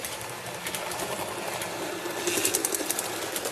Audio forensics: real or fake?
real